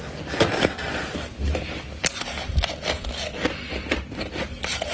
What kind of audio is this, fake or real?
real